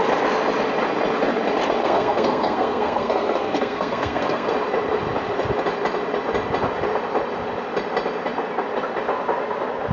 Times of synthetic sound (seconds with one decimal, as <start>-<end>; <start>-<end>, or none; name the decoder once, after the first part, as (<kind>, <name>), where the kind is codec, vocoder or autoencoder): 1.8-4.5 (codec, SNAC)